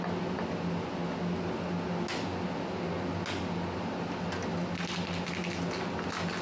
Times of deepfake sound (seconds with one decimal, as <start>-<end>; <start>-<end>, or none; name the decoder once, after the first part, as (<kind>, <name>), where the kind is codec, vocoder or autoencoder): none